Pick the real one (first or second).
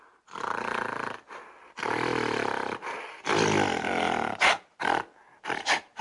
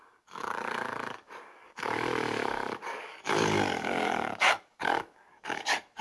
first